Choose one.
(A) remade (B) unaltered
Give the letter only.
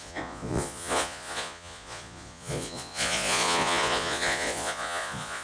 A